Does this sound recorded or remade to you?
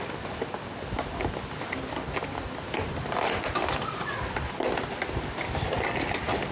recorded